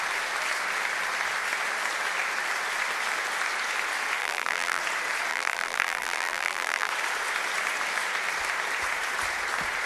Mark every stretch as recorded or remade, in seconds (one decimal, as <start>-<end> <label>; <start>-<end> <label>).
0.0-4.2 recorded; 4.2-4.8 remade; 4.8-5.3 recorded; 5.3-6.9 remade; 6.9-9.9 recorded